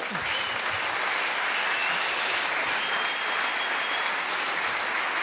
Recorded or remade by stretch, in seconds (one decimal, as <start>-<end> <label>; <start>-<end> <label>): 0.0-1.8 recorded; 1.8-2.5 remade; 2.5-4.3 recorded; 4.3-5.2 remade